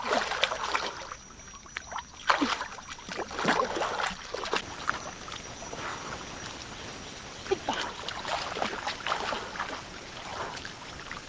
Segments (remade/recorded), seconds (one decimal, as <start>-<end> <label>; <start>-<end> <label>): 0.0-10.3 recorded; 10.3-10.9 remade; 10.9-11.3 recorded